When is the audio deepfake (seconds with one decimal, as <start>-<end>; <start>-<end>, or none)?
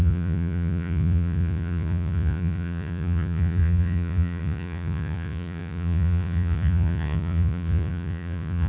0.0-8.7